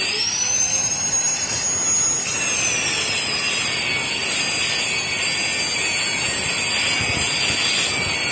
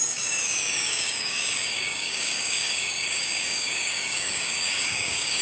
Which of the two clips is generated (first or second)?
second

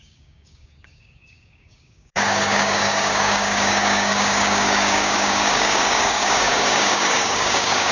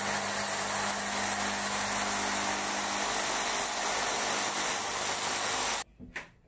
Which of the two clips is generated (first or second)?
first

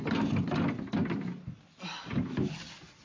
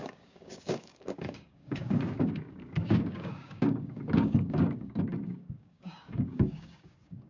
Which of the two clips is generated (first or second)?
second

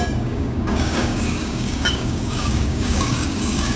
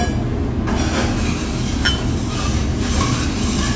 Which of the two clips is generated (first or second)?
first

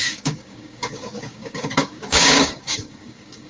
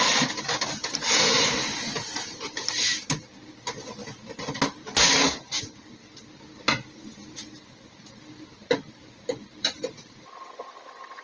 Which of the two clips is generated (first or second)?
first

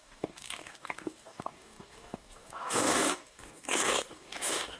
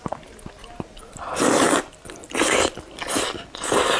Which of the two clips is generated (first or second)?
first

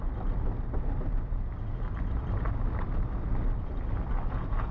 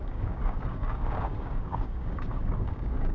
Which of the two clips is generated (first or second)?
second